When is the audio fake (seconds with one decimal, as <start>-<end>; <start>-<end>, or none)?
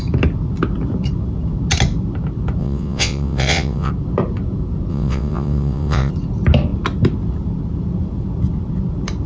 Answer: 2.6-3.9; 4.9-6.1